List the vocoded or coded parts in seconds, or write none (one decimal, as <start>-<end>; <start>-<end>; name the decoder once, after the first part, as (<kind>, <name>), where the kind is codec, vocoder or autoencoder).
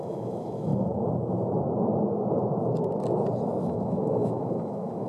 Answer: 0.0-0.7 (autoencoder, DAC-VAE); 3.6-5.1